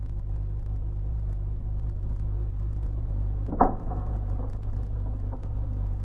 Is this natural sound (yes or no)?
no